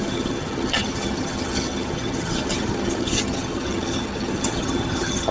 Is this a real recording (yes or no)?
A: no